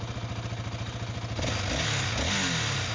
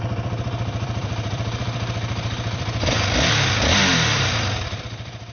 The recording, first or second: first